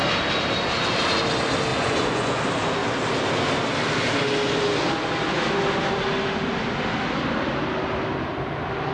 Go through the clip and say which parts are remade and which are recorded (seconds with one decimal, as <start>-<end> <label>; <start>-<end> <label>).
0.0-1.7 recorded; 1.7-2.4 remade; 2.4-8.9 recorded